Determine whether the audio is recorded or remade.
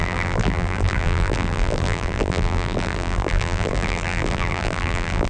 remade